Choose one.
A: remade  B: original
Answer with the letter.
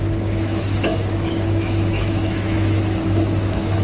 A